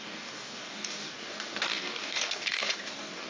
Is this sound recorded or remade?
remade